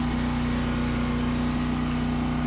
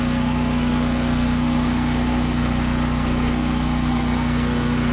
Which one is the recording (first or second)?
first